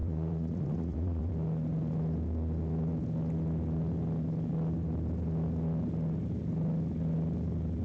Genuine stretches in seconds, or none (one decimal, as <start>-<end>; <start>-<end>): 1.3-7.8